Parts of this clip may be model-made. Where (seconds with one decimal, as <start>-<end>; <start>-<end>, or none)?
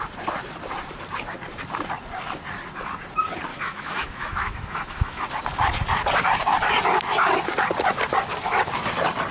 3.5-5.2